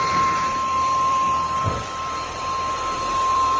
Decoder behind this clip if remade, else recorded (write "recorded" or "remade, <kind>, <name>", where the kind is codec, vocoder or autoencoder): remade, vocoder, BigVGAN v2